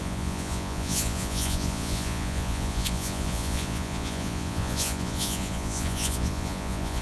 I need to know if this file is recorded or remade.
remade